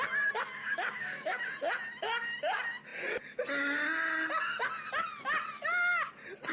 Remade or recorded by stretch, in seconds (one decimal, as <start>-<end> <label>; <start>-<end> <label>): 0.0-0.6 recorded; 0.6-1.4 remade; 1.4-6.5 recorded